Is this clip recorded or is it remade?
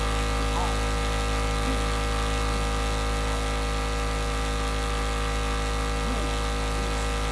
recorded